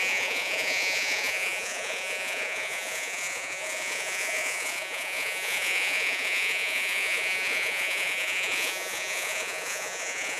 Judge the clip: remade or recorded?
remade